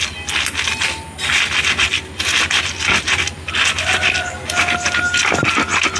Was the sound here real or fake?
real